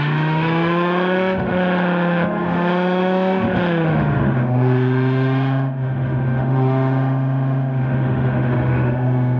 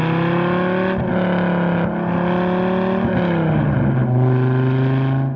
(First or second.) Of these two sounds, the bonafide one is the second